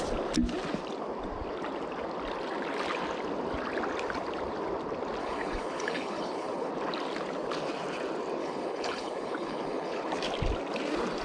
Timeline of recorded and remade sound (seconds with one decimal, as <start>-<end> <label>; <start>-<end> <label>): 0.0-5.2 recorded; 5.2-6.7 remade; 6.7-8.4 recorded; 8.4-10.1 remade; 10.1-11.2 recorded